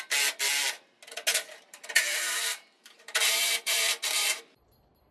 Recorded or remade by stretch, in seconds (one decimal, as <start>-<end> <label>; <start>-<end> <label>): 0.0-1.3 recorded; 1.3-4.4 remade; 4.4-5.1 recorded

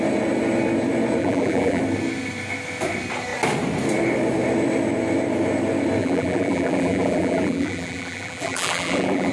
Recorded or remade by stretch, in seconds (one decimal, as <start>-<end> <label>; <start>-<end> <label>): 0.0-1.2 recorded; 1.2-1.8 remade; 1.8-6.0 recorded; 6.0-9.3 remade

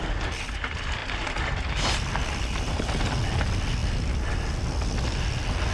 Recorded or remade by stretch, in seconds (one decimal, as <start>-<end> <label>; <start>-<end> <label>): 0.0-1.0 recorded; 1.0-2.4 remade; 2.4-3.8 recorded; 3.8-4.4 remade; 4.4-5.7 recorded

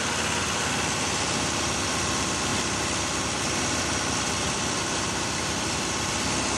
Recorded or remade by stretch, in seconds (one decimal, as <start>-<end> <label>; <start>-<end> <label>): 0.0-2.5 recorded; 2.5-6.1 remade; 6.1-6.6 recorded

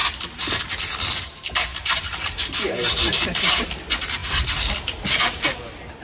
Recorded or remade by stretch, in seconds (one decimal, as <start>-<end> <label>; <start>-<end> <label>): 0.0-0.6 remade; 0.6-1.7 recorded; 1.7-3.7 remade; 3.7-6.0 recorded

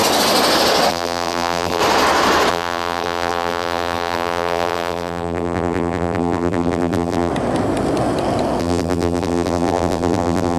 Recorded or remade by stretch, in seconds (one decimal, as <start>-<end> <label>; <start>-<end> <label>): 0.0-0.9 recorded; 0.9-1.8 remade; 1.8-2.5 recorded; 2.5-7.3 remade; 7.3-8.6 recorded; 8.6-10.6 remade

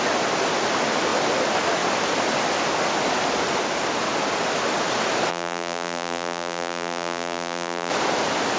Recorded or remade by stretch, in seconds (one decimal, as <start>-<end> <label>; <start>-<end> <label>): 0.0-5.3 recorded; 5.3-7.9 remade; 7.9-8.6 recorded

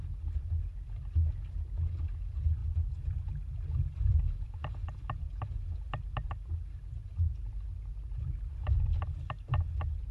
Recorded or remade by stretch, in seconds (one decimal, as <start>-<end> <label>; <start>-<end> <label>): 0.0-10.1 recorded